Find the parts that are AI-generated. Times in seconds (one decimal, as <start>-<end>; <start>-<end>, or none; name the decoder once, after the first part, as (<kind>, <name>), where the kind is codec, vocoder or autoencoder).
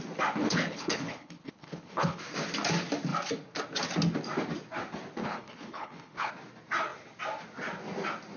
0.4-2.2 (codec, HILCodec); 5.2-6.3